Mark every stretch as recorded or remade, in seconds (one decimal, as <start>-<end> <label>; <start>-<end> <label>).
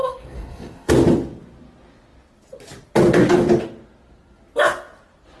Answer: 0.0-0.9 remade; 0.9-5.4 recorded